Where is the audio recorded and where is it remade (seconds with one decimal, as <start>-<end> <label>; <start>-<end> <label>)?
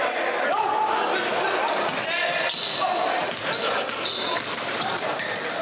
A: 0.0-1.3 recorded; 1.3-3.8 remade; 3.8-5.6 recorded